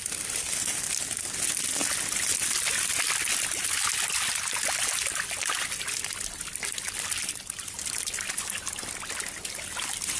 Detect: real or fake real